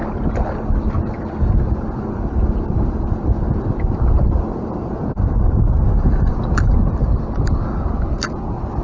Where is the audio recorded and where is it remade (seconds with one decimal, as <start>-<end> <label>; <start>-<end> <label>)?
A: 0.0-8.8 recorded